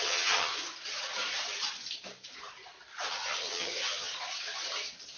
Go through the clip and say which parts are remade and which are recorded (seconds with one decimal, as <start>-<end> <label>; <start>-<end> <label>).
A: 0.0-0.5 remade; 0.5-3.1 recorded; 3.1-4.1 remade; 4.1-5.2 recorded